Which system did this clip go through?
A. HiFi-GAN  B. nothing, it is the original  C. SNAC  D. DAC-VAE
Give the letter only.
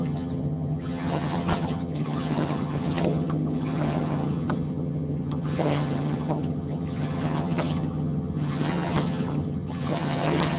A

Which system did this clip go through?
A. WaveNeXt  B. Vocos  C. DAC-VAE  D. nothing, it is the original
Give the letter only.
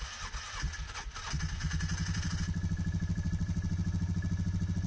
D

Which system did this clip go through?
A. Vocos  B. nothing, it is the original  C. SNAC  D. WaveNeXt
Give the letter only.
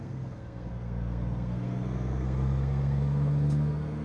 C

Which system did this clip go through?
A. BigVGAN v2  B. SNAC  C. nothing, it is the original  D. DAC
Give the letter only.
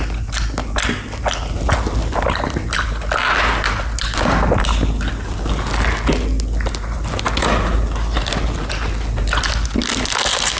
C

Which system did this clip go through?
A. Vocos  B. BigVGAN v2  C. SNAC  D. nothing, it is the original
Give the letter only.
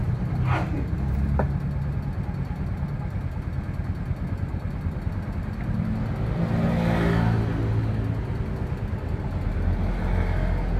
D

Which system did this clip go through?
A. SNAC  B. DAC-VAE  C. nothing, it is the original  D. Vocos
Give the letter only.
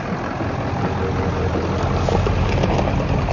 C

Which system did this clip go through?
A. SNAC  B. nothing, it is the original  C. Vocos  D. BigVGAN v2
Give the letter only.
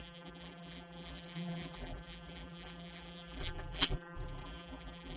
D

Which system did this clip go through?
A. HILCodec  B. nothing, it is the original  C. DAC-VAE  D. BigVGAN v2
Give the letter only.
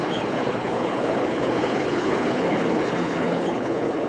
A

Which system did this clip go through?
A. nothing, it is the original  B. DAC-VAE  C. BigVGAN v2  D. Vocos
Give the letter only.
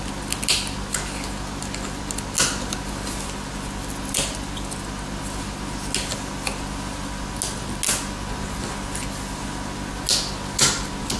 A